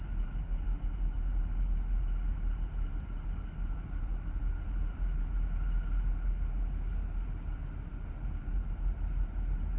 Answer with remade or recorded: recorded